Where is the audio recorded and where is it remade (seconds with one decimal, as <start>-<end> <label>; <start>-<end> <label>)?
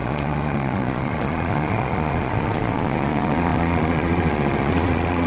0.0-5.3 remade